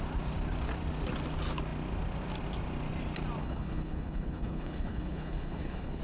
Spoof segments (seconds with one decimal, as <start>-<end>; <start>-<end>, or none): 3.4-6.0